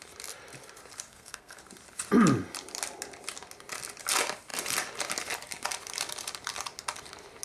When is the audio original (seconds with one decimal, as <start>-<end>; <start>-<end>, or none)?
0.0-1.1; 1.6-7.4